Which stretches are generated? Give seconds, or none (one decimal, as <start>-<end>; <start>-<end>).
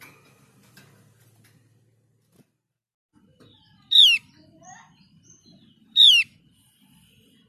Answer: 3.3-6.4